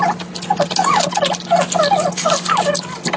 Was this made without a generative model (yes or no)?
yes